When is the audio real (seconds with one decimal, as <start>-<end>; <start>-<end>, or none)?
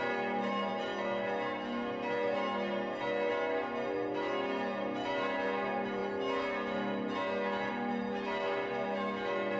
0.0-9.6